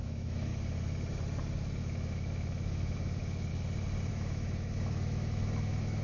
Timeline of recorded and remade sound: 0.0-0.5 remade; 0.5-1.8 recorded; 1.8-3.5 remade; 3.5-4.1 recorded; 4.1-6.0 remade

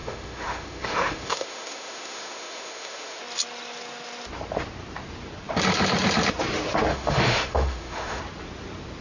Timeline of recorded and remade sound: 0.0-3.2 remade; 3.2-6.9 recorded; 6.9-8.2 remade; 8.2-9.0 recorded

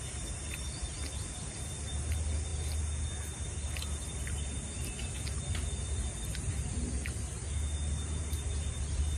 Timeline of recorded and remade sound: 0.0-9.2 recorded

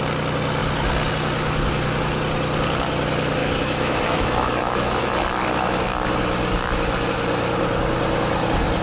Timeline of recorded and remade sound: 0.0-3.4 recorded; 3.4-5.0 remade; 5.0-8.8 recorded

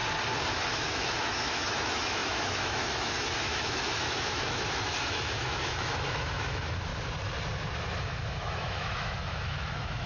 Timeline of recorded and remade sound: 0.0-0.7 recorded; 0.7-6.9 remade; 6.9-8.0 recorded; 8.0-10.1 remade

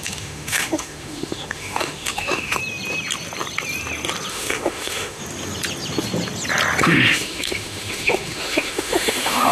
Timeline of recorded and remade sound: 0.0-2.6 remade; 2.6-4.3 recorded; 4.3-5.2 remade; 5.2-6.8 recorded; 6.8-9.5 remade

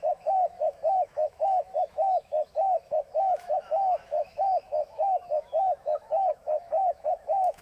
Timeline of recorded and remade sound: 0.0-7.6 remade